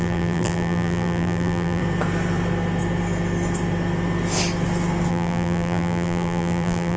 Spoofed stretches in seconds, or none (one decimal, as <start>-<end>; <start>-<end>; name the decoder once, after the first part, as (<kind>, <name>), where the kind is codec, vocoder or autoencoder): 0.0-1.8 (vocoder, BigVGAN v2); 5.1-7.0